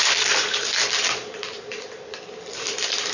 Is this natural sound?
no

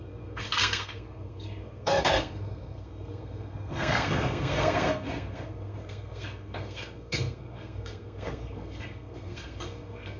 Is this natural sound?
no